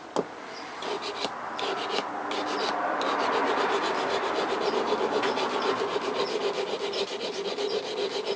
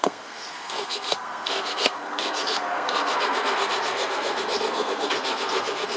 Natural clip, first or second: first